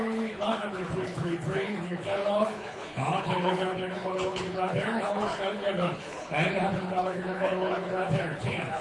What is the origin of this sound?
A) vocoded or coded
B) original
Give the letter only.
A